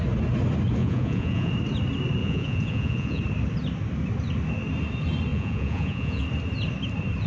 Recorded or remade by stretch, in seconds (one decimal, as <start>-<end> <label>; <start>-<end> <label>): 0.0-0.8 recorded; 0.8-1.5 remade; 1.5-2.2 recorded; 2.2-3.2 remade; 3.2-5.3 recorded; 5.3-6.2 remade; 6.2-7.3 recorded